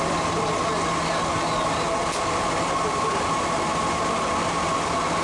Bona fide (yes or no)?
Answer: yes